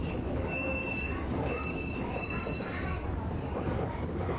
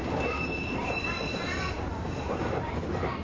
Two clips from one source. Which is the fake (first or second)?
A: first